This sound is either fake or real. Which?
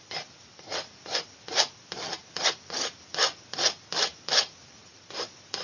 fake